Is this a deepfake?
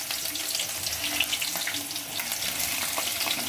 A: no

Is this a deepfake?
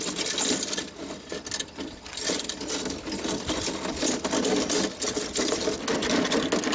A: no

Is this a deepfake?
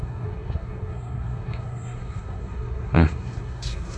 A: yes